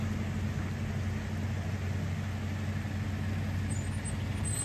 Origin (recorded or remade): recorded